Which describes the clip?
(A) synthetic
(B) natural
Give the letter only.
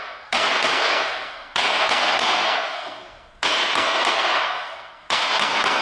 A